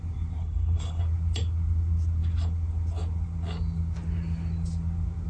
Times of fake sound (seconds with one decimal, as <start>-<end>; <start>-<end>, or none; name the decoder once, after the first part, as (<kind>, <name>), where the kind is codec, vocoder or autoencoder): 0.4-1.0 (codec, HILCodec)